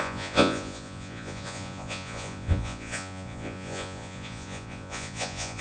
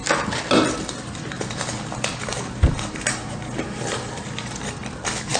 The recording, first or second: second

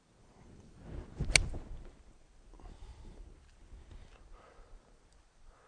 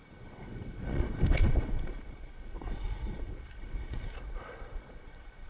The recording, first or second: first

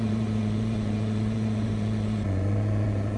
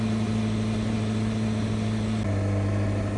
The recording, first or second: second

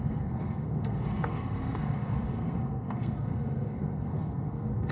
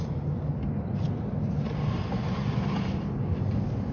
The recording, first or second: second